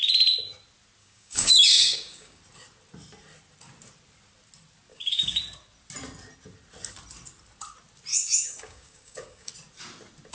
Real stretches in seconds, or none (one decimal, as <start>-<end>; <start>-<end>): 0.0-1.0; 2.4-4.9; 5.4-8.1; 9.5-10.3